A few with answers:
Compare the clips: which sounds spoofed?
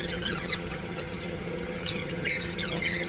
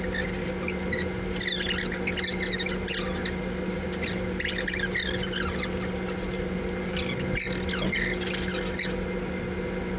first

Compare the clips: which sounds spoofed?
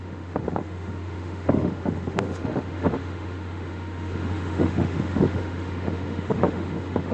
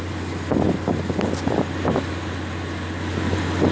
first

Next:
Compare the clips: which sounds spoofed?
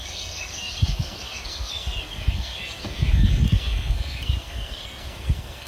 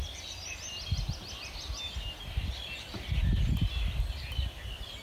first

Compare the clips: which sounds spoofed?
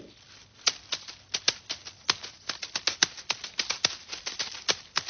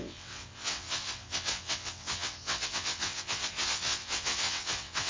second